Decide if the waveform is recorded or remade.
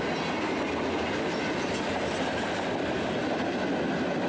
recorded